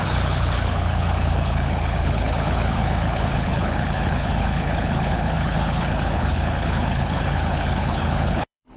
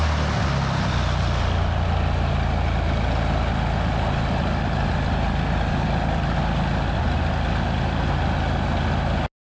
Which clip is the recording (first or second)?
second